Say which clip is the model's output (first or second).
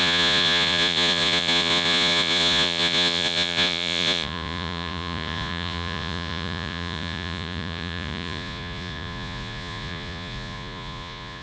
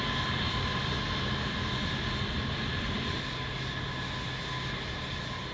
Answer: first